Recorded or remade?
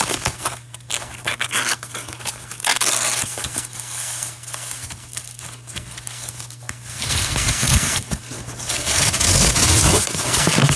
remade